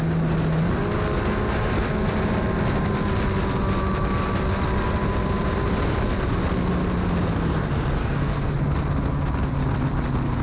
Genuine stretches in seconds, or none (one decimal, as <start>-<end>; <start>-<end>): 0.0-8.0; 8.5-10.4